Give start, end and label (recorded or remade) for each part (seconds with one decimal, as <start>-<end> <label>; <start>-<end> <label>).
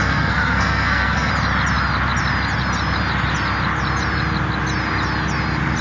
0.0-1.3 remade; 1.3-5.8 recorded